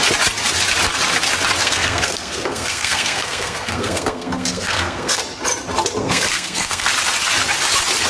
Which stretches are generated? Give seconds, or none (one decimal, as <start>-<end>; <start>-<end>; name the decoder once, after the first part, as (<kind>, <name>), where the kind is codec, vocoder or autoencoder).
1.6-5.2 (codec, SNAC); 6.0-6.9